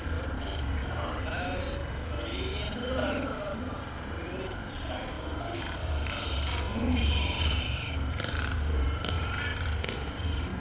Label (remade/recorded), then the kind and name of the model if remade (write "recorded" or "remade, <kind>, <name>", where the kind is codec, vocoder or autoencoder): remade, vocoder, BigVGAN v2